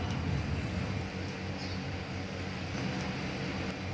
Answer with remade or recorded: recorded